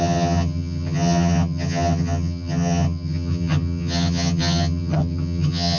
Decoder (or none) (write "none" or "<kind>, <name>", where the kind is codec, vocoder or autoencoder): vocoder, HiFi-GAN